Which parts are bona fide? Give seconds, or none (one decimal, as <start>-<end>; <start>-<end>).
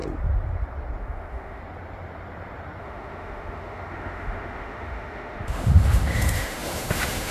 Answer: 0.0-1.0; 1.6-2.8